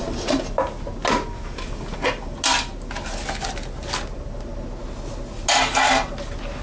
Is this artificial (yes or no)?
no